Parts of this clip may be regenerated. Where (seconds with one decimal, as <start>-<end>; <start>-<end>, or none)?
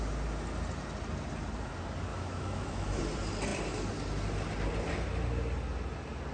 2.1-3.0